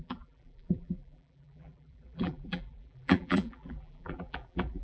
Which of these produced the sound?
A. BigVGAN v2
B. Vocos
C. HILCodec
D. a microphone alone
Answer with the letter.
A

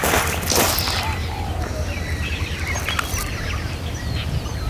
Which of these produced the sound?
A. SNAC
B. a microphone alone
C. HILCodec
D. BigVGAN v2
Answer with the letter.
B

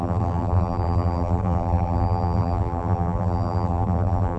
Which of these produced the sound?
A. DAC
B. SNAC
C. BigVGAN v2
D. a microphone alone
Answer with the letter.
C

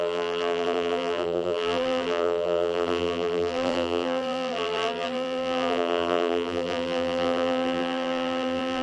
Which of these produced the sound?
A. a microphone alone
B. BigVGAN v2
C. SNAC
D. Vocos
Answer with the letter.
B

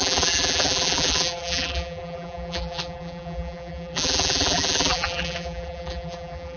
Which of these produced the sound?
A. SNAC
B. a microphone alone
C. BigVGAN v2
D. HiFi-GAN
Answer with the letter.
C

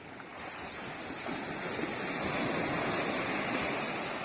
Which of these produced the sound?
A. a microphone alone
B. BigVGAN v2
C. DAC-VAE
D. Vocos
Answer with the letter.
A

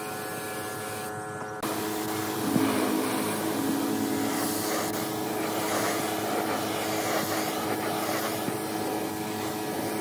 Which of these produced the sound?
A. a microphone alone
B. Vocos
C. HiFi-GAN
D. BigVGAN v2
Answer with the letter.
A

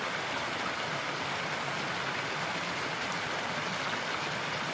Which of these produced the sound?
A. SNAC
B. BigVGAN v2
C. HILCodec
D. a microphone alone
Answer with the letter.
D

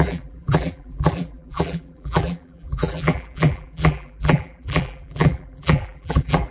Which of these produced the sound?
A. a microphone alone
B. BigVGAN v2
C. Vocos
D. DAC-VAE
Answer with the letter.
B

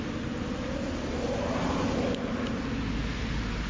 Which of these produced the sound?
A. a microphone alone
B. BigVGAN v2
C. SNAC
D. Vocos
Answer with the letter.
A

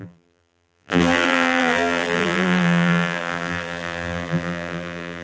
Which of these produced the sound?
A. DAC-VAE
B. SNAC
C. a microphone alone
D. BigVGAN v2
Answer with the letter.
D